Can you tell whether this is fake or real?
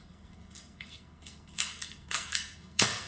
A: fake